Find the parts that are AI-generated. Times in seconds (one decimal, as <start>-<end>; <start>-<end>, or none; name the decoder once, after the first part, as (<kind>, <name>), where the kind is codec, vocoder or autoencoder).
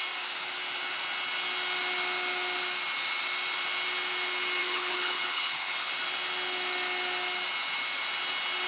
4.6-5.9 (codec, HILCodec)